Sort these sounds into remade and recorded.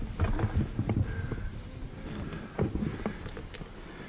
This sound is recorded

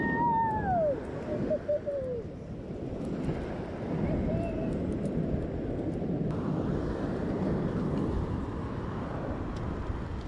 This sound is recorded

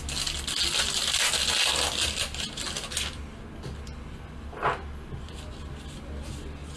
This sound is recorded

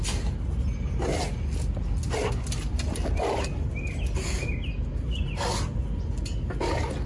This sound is recorded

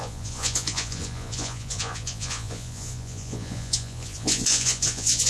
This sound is remade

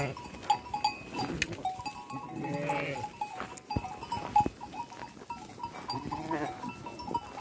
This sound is recorded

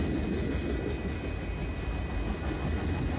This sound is recorded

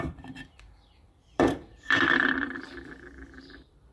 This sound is remade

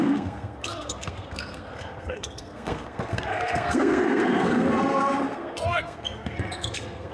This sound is remade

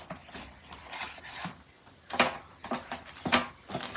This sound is recorded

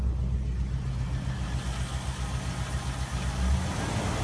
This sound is recorded